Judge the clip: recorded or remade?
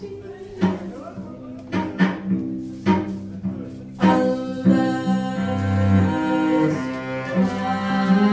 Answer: recorded